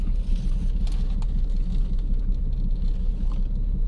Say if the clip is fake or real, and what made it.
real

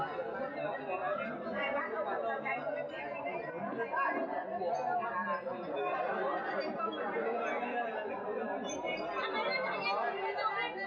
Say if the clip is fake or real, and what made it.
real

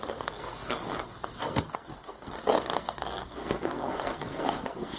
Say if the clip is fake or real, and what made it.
fake, codec, SNAC